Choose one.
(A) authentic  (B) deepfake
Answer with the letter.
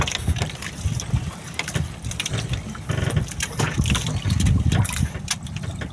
A